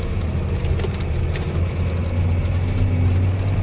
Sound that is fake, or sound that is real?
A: real